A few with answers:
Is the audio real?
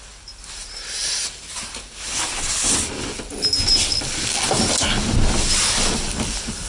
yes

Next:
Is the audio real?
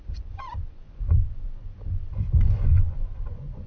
no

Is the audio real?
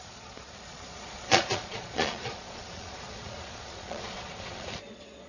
no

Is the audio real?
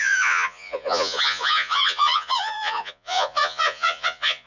no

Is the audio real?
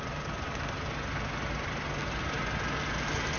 yes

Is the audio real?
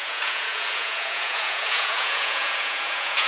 no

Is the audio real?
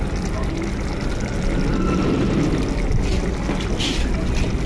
yes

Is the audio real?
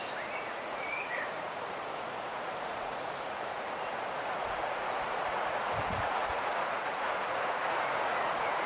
no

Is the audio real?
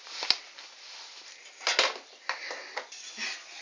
yes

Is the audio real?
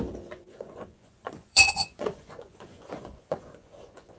no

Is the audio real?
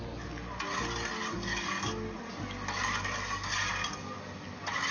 yes